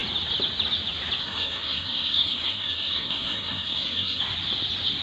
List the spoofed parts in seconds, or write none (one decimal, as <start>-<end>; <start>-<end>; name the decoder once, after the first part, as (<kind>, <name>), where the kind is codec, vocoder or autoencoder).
1.2-4.2 (codec, SNAC)